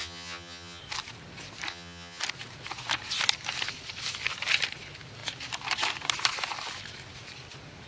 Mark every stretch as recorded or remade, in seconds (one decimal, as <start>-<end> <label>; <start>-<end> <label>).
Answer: 0.0-0.8 remade; 0.8-1.7 recorded; 1.7-2.2 remade; 2.2-7.9 recorded